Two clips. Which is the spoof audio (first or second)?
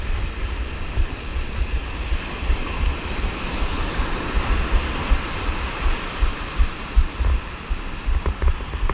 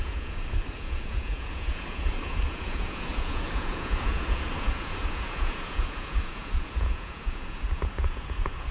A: second